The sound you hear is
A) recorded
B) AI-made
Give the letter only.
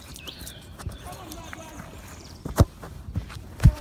B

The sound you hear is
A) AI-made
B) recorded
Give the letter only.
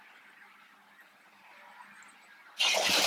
B